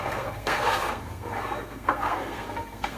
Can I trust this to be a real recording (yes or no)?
no